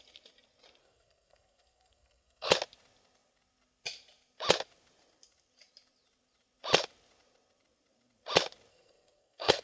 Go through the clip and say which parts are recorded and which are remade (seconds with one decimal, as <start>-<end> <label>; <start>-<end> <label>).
0.0-0.8 recorded; 0.8-2.5 remade; 2.5-8.7 recorded; 8.7-9.6 remade